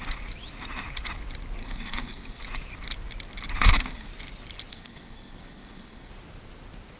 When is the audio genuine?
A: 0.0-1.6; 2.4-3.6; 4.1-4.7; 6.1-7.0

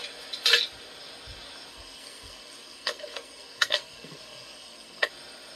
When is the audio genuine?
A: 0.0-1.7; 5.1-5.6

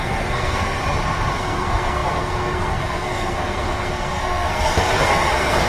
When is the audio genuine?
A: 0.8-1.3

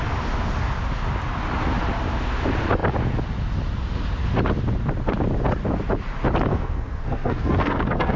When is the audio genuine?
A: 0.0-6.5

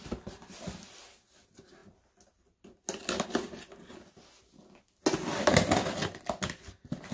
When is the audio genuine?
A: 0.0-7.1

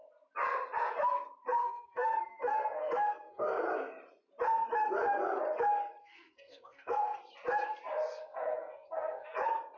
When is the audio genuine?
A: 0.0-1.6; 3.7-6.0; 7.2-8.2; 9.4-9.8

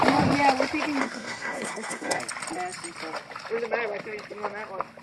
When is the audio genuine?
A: 0.0-1.0; 2.2-5.0

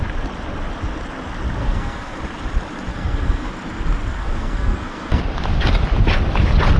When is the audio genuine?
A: 0.0-1.6; 2.2-2.9; 3.5-4.2; 5.2-6.8